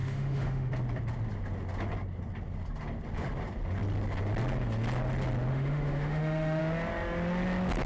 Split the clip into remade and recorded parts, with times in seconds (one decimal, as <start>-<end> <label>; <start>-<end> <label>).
0.0-0.7 remade; 0.7-5.5 recorded; 5.5-6.6 remade; 6.6-7.9 recorded